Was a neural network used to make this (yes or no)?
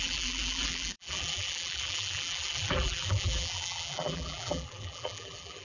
yes